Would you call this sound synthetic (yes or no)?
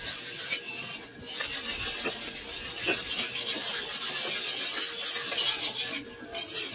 no